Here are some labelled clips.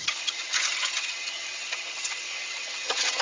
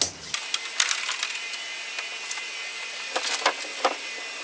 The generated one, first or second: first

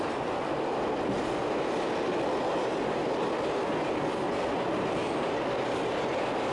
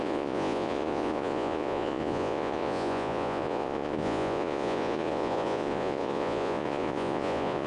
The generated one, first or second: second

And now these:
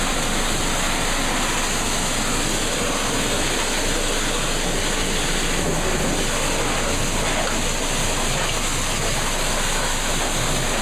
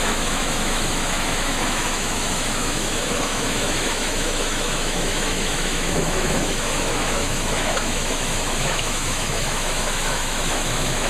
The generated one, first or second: second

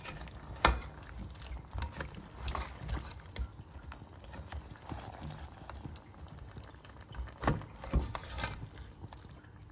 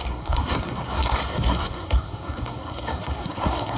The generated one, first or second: second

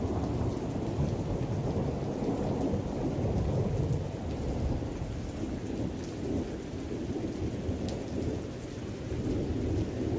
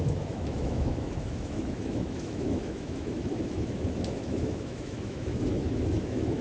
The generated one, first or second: second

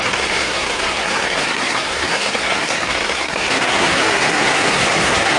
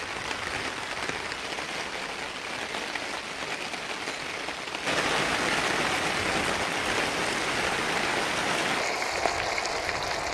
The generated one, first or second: first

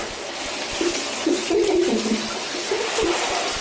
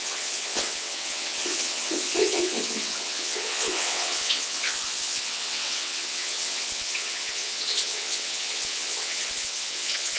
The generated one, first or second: second